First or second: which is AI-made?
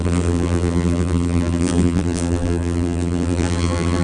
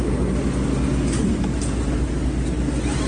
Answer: first